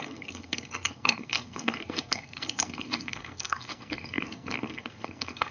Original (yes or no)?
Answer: no